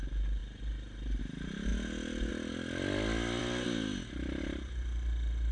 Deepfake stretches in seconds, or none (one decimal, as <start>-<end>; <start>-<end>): none